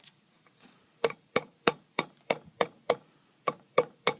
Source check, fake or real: fake